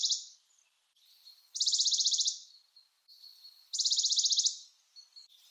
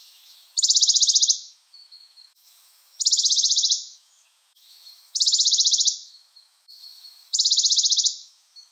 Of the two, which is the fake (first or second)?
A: second